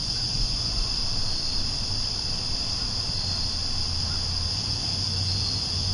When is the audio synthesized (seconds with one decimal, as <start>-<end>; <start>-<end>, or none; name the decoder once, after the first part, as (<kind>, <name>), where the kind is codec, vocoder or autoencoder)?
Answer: 0.0-1.0 (vocoder, Vocos); 4.5-5.9